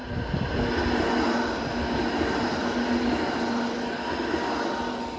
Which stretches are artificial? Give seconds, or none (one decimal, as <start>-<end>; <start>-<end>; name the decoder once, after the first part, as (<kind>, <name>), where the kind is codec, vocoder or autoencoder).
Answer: none